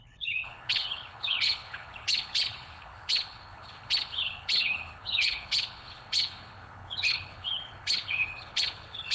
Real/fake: fake